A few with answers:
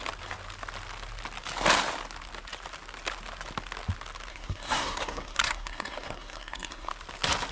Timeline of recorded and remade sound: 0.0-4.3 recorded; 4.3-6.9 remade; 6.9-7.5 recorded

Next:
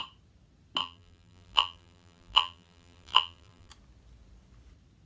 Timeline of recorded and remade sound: 0.0-0.8 recorded; 0.8-3.7 remade; 3.7-5.1 recorded

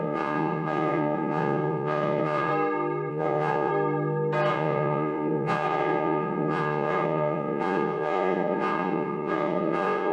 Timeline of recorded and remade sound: 0.0-2.5 remade; 2.5-3.1 recorded; 3.1-3.7 remade; 3.7-4.5 recorded; 4.5-10.1 remade

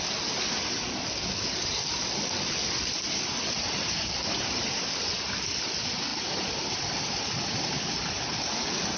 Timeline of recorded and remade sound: 0.0-9.0 recorded

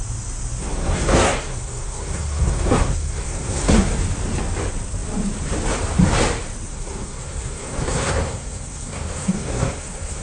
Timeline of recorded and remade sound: 0.0-0.6 recorded; 0.6-4.0 remade; 4.0-6.7 recorded; 6.7-10.2 remade